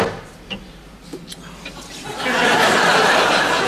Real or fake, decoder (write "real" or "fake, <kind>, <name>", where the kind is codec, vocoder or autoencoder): real